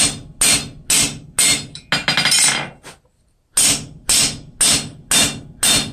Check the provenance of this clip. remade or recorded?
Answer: recorded